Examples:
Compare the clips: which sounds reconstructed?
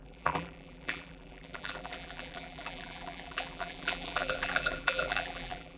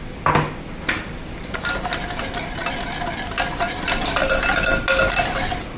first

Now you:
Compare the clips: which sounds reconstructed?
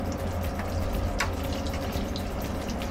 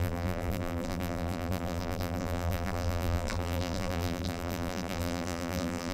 second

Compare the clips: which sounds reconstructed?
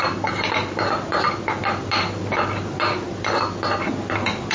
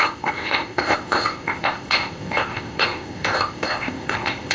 second